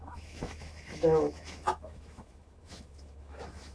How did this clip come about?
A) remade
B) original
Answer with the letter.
A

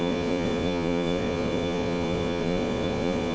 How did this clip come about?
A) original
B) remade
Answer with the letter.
B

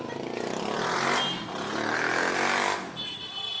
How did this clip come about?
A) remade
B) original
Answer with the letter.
B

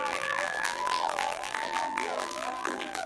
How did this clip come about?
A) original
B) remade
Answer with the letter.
B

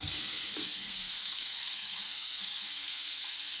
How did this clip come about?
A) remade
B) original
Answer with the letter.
A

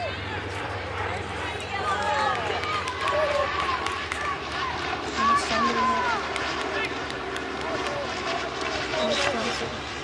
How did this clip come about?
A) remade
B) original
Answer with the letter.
A